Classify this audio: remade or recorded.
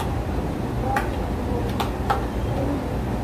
remade